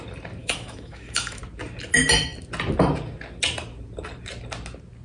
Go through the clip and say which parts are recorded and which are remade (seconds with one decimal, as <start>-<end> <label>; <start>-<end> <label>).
0.0-0.4 recorded; 0.4-1.4 remade; 1.4-5.0 recorded